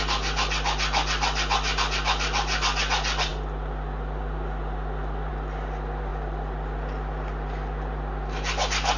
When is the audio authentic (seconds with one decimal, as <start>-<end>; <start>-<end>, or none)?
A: 0.0-9.0